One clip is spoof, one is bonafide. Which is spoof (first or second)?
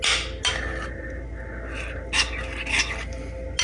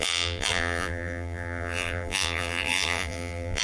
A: second